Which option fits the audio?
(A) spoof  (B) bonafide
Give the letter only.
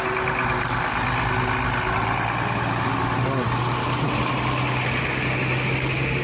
B